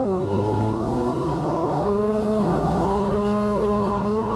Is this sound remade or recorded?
remade